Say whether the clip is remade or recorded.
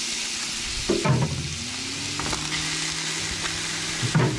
recorded